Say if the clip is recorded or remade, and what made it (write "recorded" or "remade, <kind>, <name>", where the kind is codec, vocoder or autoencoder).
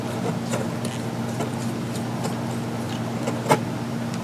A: recorded